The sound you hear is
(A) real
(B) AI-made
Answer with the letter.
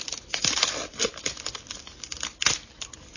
B